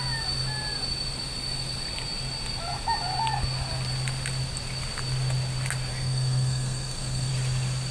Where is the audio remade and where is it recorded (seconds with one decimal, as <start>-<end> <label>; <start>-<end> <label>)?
0.0-5.9 recorded; 5.9-7.3 remade; 7.3-7.9 recorded